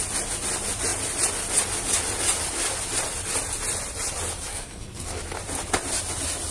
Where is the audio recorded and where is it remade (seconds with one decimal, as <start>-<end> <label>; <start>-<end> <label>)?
0.0-4.5 recorded; 4.5-5.2 remade; 5.2-6.5 recorded